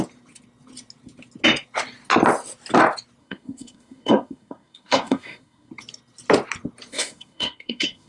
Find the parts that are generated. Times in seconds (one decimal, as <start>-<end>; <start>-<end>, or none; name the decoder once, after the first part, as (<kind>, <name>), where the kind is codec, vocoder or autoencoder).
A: 3.2-5.7 (codec, SNAC); 6.9-8.1

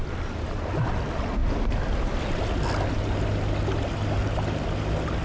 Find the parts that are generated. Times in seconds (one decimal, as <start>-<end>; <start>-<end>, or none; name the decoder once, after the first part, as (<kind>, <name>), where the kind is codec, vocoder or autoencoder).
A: 0.0-0.9 (vocoder, BigVGAN v2); 1.4-2.2

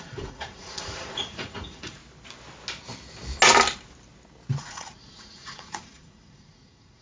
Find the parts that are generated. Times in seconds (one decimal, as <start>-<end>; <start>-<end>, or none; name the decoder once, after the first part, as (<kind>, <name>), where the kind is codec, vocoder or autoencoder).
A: 0.0-2.0 (vocoder, Vocos); 4.6-7.0